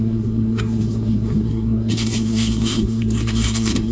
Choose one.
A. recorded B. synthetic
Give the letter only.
B